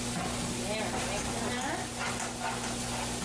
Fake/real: real